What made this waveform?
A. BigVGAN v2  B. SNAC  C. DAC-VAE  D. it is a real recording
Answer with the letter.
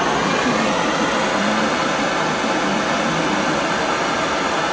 D